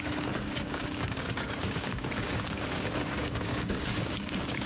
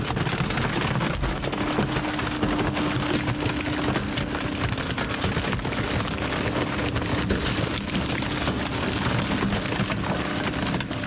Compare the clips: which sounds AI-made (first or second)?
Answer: first